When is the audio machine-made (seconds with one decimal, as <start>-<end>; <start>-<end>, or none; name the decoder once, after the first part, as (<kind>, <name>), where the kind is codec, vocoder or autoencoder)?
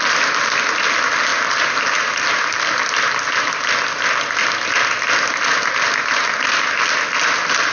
none